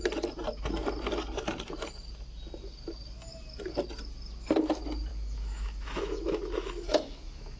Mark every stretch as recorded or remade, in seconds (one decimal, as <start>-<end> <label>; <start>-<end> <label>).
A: 0.0-5.1 recorded; 5.1-7.6 remade